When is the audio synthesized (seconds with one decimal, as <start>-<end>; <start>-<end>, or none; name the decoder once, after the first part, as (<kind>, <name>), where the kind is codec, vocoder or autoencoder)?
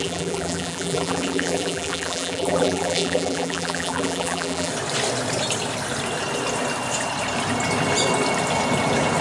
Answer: 0.0-4.7 (vocoder, BigVGAN v2)